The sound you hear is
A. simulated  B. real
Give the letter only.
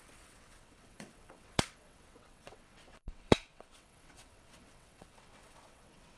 A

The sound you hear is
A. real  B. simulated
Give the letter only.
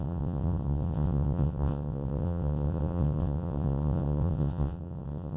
B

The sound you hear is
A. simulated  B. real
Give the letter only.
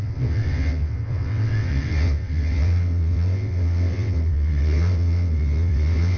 A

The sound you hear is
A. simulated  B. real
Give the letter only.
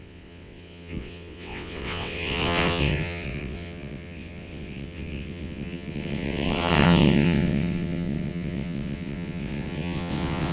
A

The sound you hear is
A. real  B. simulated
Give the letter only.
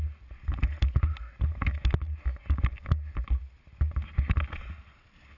A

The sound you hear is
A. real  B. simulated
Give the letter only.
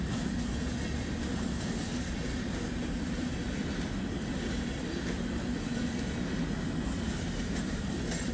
A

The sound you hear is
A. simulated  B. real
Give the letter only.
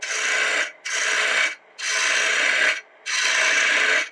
B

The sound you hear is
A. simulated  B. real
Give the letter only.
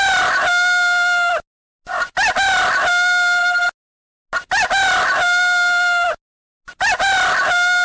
B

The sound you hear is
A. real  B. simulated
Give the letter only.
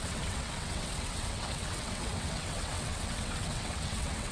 B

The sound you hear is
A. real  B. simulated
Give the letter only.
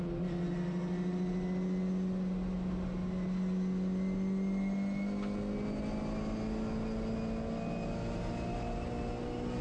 A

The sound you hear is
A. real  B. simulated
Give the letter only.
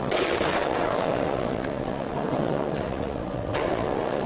B